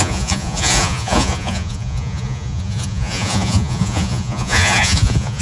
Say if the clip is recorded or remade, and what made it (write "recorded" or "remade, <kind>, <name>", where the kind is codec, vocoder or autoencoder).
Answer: remade, vocoder, Vocos